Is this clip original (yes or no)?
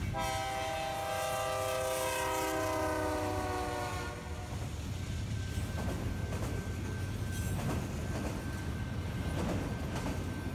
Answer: yes